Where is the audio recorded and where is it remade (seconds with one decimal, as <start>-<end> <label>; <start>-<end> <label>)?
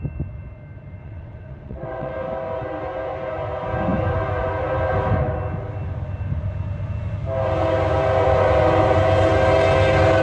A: 0.0-1.0 recorded; 1.0-2.1 remade; 2.1-10.2 recorded